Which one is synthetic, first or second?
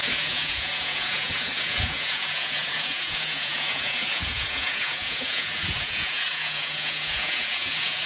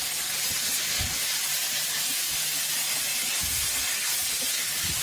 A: first